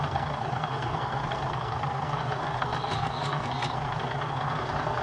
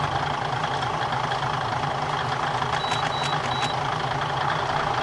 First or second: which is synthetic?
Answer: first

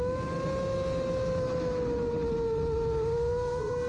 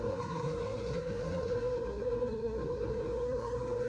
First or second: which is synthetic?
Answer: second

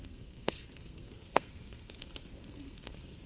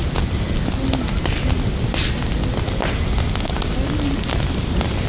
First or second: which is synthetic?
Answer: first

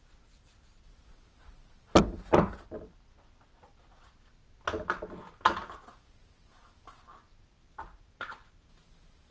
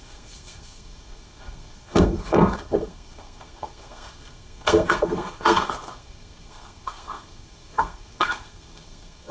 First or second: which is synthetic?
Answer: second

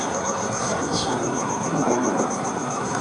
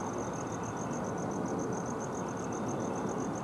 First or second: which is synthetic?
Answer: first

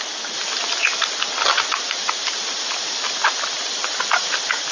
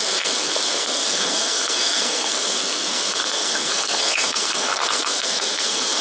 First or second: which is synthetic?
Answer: second